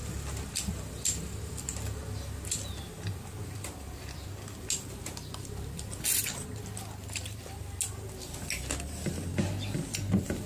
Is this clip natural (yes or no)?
yes